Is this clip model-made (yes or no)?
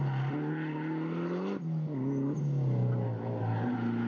no